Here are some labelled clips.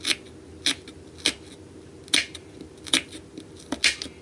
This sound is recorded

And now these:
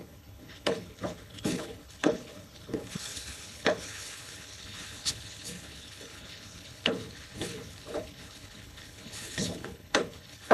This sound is remade